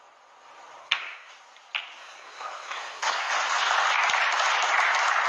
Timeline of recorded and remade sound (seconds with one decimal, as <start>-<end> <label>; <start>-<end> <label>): 0.0-0.8 recorded; 0.8-1.3 remade; 1.3-2.0 recorded; 2.0-3.3 remade; 3.3-5.3 recorded